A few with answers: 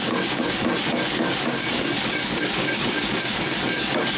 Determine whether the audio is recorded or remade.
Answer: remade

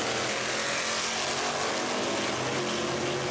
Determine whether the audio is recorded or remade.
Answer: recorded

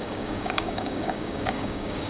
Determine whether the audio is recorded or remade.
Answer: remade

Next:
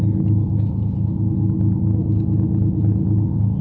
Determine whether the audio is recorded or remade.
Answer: recorded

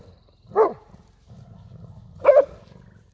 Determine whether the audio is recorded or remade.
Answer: recorded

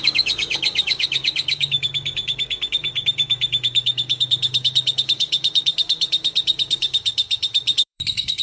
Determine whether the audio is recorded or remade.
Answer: remade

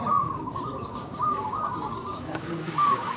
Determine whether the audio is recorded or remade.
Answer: remade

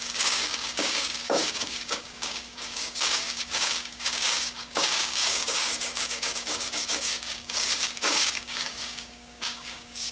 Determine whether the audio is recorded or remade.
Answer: remade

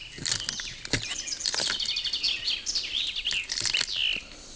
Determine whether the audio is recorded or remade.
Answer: recorded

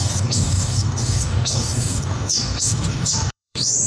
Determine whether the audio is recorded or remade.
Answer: remade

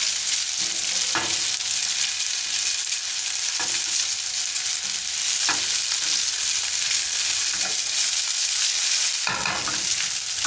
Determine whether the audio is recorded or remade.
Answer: recorded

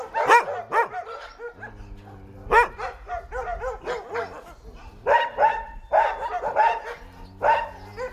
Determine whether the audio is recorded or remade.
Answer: recorded